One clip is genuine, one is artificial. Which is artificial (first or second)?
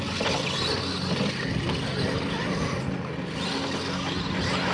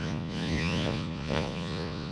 second